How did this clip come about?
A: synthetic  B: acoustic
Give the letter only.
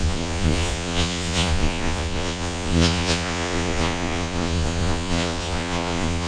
A